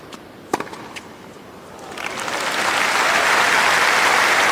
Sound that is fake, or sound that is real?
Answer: real